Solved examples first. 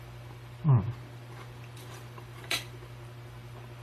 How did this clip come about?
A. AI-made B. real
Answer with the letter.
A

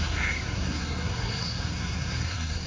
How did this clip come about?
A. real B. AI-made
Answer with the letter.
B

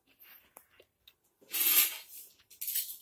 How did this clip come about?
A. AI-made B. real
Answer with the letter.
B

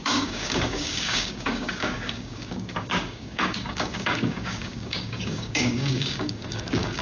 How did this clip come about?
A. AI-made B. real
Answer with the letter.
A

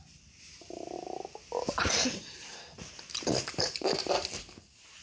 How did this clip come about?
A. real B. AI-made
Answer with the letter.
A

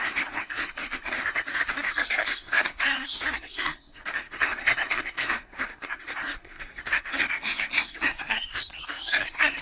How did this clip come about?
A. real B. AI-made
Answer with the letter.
B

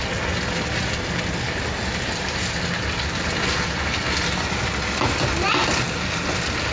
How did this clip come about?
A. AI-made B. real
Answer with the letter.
B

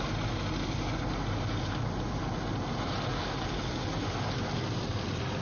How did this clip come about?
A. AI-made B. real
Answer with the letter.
B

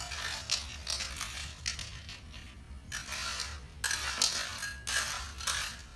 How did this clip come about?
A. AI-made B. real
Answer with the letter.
B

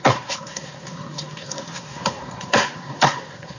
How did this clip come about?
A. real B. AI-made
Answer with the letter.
B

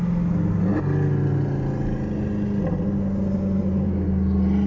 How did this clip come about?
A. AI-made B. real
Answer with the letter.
B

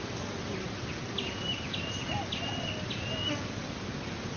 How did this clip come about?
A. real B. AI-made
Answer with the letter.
A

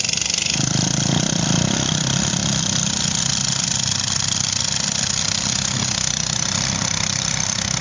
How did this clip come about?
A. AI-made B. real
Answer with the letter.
B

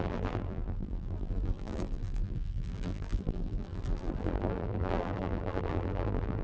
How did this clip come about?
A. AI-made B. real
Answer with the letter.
A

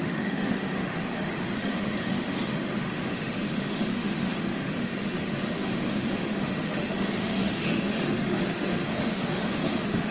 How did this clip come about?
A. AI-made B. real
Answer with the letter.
A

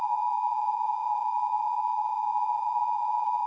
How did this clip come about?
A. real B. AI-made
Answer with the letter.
B